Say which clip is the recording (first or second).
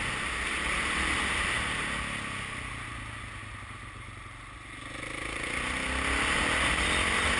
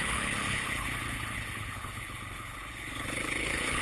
first